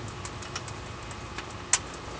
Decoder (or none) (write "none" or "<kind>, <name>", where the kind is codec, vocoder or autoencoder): none